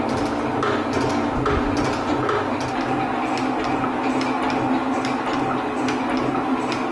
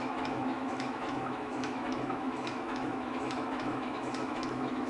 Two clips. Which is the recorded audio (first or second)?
first